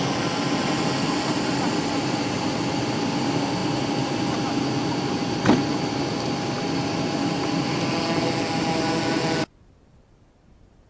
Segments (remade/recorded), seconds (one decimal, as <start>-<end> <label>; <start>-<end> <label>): 0.0-10.9 recorded